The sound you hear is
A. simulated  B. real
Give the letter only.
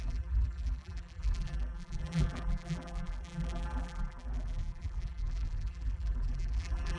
A